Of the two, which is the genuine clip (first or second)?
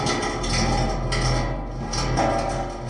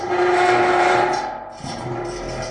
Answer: first